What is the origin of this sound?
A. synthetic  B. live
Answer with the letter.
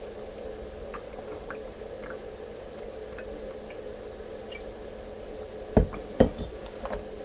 B